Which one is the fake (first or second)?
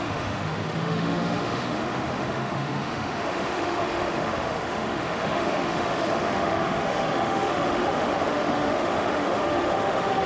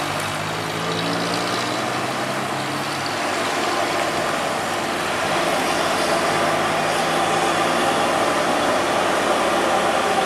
first